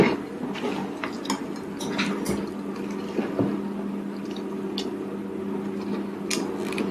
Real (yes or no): yes